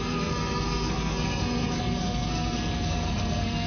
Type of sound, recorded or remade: remade